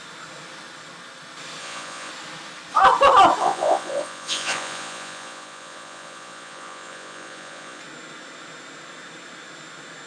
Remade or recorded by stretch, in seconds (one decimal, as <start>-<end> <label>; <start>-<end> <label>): 0.0-1.6 recorded; 1.6-2.1 remade; 2.1-3.4 recorded; 3.4-7.8 remade; 7.8-10.1 recorded